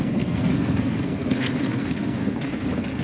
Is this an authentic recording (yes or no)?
no